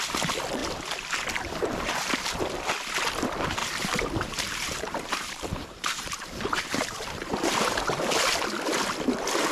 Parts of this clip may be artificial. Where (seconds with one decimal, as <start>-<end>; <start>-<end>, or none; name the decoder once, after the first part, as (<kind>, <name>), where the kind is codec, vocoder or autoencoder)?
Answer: 3.6-8.0 (vocoder, BigVGAN v2)

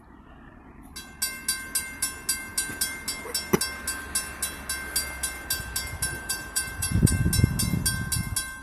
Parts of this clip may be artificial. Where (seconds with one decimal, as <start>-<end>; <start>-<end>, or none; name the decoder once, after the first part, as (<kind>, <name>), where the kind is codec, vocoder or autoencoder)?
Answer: 6.1-7.1 (vocoder, BigVGAN v2)